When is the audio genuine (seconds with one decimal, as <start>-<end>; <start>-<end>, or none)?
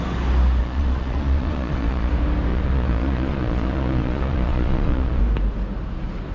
0.0-0.6; 2.1-2.5; 5.2-6.3